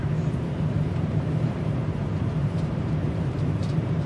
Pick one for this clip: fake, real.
fake